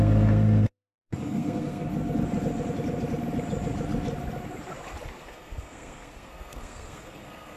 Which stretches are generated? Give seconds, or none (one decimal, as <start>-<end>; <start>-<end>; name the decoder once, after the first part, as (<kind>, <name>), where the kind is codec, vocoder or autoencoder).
0.0-1.9 (codec, SNAC); 5.2-7.6